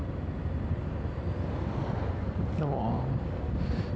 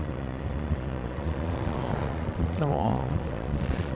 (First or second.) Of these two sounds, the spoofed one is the second